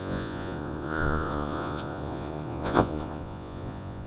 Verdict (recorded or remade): remade